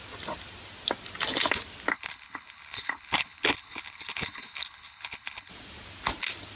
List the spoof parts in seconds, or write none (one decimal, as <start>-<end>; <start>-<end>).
1.9-5.5